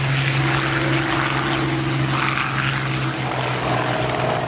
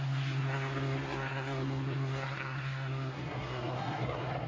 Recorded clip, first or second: first